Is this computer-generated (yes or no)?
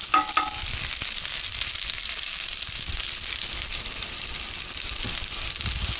yes